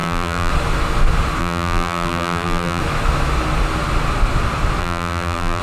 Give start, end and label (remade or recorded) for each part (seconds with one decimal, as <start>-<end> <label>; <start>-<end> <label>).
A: 0.0-0.5 remade; 0.5-1.4 recorded; 1.4-2.8 remade; 2.8-4.8 recorded; 4.8-5.6 remade

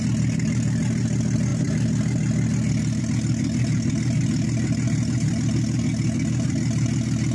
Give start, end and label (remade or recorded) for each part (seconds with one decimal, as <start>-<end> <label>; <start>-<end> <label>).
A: 0.0-7.3 recorded

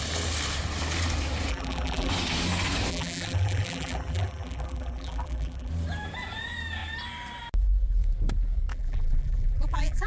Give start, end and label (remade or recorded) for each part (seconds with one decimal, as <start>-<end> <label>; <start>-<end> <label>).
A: 0.0-1.5 recorded; 1.5-2.1 remade; 2.1-2.9 recorded; 2.9-5.7 remade; 5.7-8.7 recorded; 8.7-10.1 remade

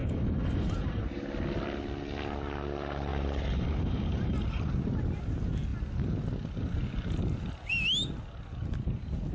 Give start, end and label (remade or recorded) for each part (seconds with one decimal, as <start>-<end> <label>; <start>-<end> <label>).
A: 0.0-1.0 remade; 1.0-3.1 recorded; 3.1-4.7 remade; 4.7-9.3 recorded

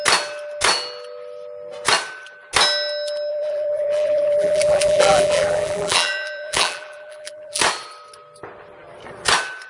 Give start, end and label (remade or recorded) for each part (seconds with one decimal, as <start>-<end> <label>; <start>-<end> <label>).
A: 0.0-3.3 recorded; 3.3-7.6 remade; 7.6-9.7 recorded

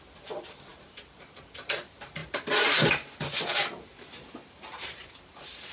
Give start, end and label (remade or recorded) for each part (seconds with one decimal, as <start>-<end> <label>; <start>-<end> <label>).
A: 0.0-2.2 remade; 2.2-2.9 recorded; 2.9-3.5 remade; 3.5-4.7 recorded; 4.7-5.7 remade

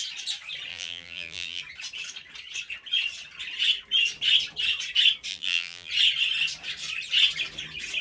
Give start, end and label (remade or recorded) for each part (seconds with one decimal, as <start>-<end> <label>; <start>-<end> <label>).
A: 0.0-0.7 recorded; 0.7-1.6 remade; 1.6-5.3 recorded; 5.3-5.9 remade; 5.9-8.0 recorded

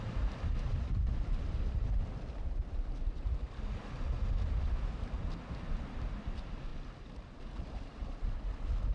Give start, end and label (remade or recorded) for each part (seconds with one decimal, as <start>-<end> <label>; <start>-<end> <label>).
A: 0.0-0.7 recorded; 0.7-5.0 remade; 5.0-6.7 recorded; 6.7-7.4 remade; 7.4-8.0 recorded; 8.0-8.5 remade; 8.5-8.9 recorded